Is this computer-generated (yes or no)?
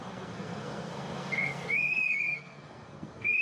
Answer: yes